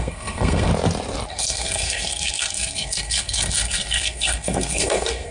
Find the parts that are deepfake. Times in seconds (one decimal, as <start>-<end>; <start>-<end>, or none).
0.0-0.7; 1.3-5.3